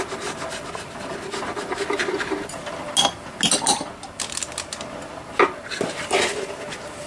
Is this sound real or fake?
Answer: real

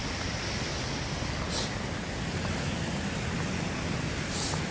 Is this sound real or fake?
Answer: real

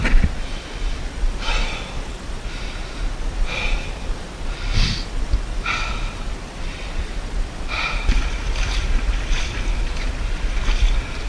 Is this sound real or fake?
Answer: fake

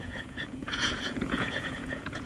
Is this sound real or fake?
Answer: fake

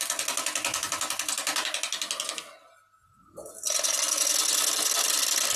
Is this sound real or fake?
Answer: real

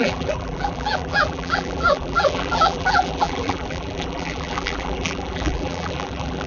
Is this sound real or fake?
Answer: fake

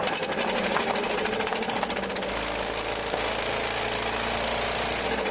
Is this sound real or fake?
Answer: real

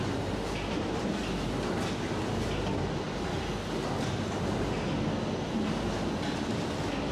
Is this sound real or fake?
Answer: real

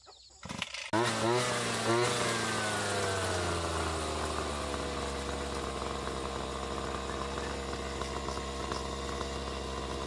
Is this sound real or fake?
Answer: real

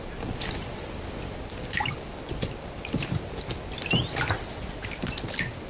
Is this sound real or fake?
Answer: real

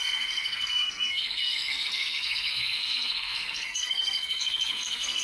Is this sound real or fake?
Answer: fake